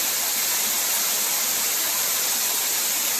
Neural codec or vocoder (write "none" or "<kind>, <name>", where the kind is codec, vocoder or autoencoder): none